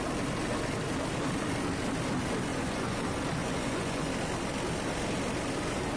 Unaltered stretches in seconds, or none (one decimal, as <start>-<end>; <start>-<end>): 0.0-2.5; 3.0-3.4; 4.1-6.0